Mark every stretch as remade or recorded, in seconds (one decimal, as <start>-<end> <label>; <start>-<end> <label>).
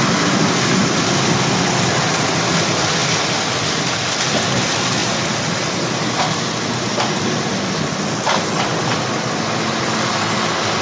0.0-10.8 recorded